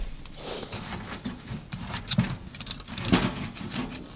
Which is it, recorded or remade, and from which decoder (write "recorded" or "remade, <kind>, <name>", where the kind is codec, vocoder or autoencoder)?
recorded